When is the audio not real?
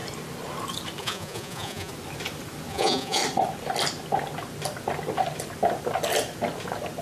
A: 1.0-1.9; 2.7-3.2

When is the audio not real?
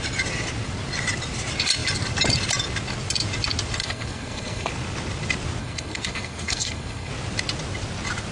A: 3.8-4.7; 5.6-7.1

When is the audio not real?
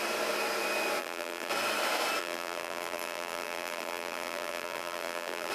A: 1.0-1.5; 2.2-5.5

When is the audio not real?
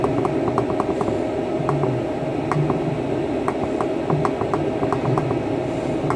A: none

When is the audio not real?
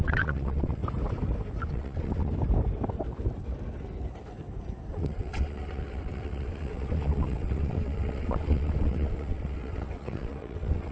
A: 0.0-0.8; 1.7-2.3; 4.9-10.9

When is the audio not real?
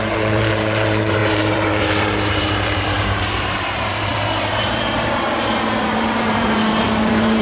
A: 0.0-7.4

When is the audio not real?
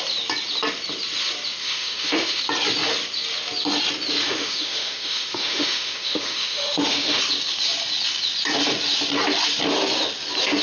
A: 1.6-2.4; 4.2-7.2